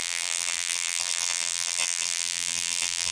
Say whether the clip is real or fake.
fake